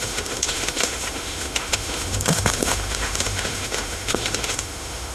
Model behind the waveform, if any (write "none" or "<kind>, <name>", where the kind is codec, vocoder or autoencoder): autoencoder, DAC-VAE